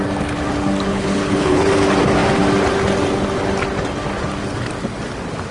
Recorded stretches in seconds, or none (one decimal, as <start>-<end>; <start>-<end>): 0.0-0.9; 1.7-5.5